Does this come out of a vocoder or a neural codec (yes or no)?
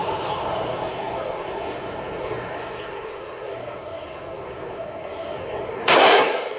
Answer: yes